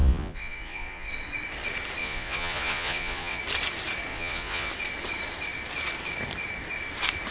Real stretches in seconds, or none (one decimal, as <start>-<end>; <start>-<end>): 1.1-2.0; 3.4-4.1; 4.7-7.3